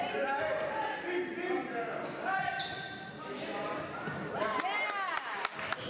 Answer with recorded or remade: recorded